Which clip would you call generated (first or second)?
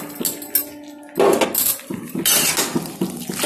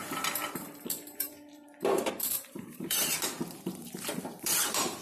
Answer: second